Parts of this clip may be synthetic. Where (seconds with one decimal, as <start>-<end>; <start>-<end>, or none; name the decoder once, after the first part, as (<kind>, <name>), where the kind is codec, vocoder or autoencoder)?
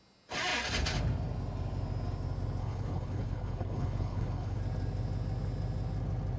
2.6-4.6 (codec, HILCodec)